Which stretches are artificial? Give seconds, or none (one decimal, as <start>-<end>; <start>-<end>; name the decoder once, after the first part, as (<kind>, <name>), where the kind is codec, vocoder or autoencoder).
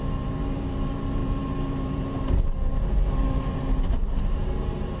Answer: 0.0-5.0 (vocoder, BigVGAN v2)